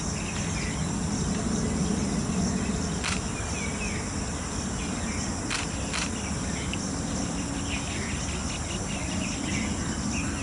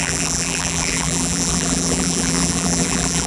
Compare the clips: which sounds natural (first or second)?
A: first